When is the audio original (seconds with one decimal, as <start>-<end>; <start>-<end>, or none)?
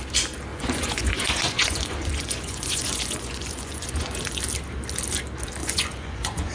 0.0-0.5; 4.4-5.6